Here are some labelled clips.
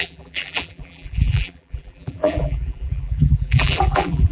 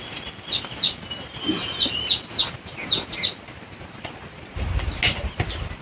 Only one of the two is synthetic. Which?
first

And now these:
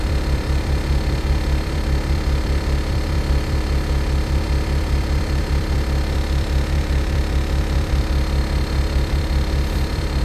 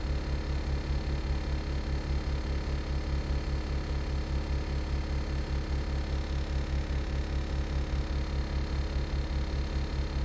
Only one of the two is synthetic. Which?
first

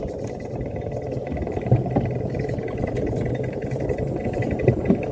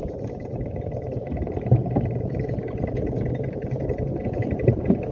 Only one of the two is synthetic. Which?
second